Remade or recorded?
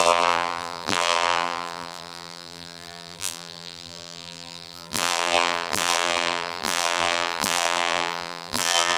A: remade